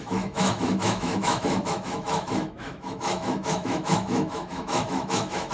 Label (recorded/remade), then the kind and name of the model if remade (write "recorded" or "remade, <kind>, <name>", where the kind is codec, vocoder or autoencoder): remade, autoencoder, DAC-VAE